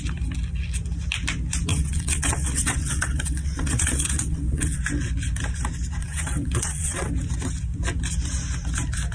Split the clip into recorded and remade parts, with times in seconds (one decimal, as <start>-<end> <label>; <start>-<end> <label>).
0.0-1.7 recorded; 1.7-4.8 remade; 4.8-6.0 recorded; 6.0-7.1 remade; 7.1-9.1 recorded

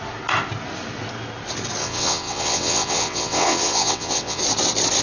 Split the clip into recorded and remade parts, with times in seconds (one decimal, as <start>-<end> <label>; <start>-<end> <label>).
0.0-1.8 recorded; 1.8-4.4 remade; 4.4-5.0 recorded

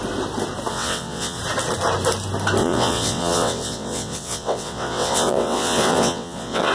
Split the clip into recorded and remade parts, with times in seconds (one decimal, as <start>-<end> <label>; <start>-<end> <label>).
0.0-0.7 recorded; 0.7-1.4 remade; 1.4-2.6 recorded; 2.6-6.7 remade

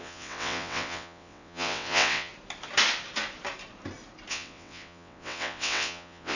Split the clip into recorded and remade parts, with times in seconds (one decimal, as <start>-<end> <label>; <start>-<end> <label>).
0.0-2.3 remade; 2.3-4.3 recorded; 4.3-6.4 remade

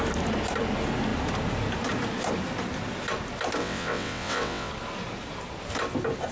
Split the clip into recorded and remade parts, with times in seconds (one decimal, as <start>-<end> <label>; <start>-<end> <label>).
0.0-3.6 recorded; 3.6-4.7 remade; 4.7-6.3 recorded

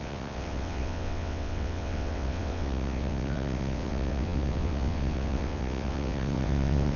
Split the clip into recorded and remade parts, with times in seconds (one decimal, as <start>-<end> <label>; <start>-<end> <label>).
0.0-7.0 remade

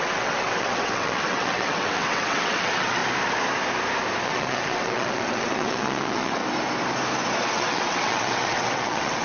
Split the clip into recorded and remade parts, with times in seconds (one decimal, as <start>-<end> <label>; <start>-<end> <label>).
0.0-3.0 remade; 3.0-4.2 recorded; 4.2-6.4 remade; 6.4-7.5 recorded; 7.5-9.2 remade

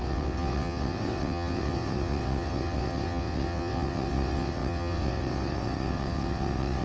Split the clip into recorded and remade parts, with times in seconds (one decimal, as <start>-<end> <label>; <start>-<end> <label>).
0.0-6.8 remade